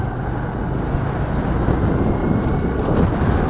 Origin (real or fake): real